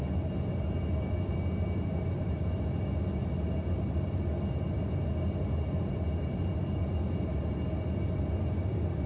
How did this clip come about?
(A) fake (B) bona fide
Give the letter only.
B